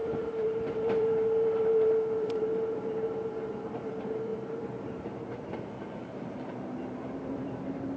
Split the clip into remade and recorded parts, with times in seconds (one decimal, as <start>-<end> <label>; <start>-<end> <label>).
0.0-8.0 remade